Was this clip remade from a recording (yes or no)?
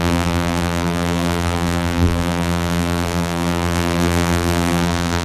yes